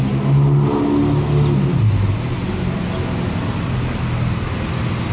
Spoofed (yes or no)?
no